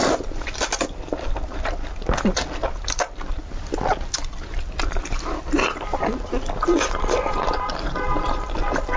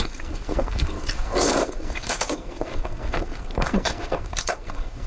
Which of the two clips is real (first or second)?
first